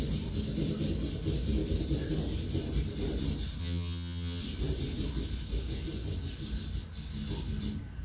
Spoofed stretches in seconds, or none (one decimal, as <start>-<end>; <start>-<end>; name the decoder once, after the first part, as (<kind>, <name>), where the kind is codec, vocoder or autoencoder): 3.6-4.4 (vocoder, HiFi-GAN)